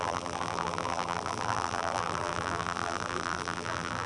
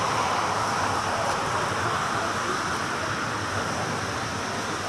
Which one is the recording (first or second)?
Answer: second